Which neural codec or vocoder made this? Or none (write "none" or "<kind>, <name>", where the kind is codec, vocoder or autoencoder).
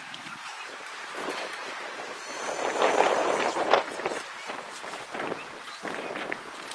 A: vocoder, BigVGAN v2